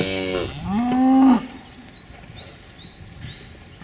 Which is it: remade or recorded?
recorded